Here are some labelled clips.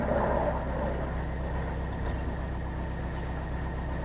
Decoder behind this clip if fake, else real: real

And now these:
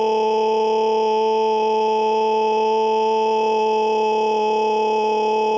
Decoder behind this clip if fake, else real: real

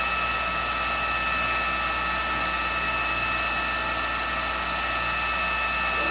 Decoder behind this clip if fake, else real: real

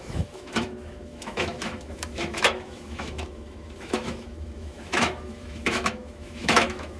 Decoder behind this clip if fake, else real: fake, autoencoder, DAC-VAE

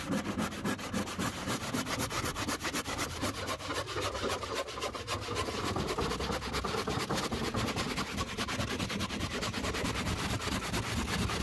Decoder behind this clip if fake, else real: real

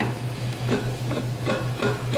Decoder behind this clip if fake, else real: fake, autoencoder, DAC-VAE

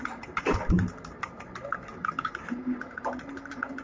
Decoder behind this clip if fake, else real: real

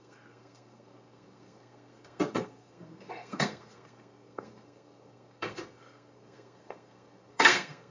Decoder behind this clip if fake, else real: fake, codec, SNAC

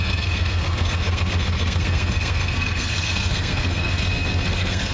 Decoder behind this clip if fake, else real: fake, codec, SNAC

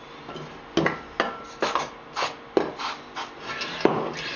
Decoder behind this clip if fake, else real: real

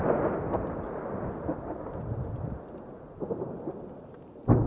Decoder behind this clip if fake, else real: real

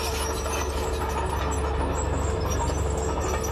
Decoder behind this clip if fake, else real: real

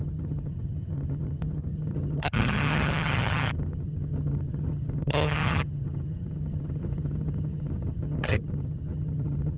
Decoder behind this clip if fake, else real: fake, vocoder, HiFi-GAN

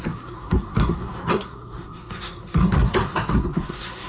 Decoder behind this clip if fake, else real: fake, codec, SNAC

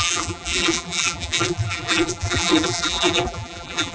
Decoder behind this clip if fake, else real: fake, vocoder, BigVGAN v2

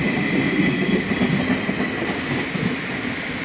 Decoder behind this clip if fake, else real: real